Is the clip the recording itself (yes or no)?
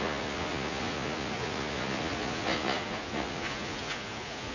no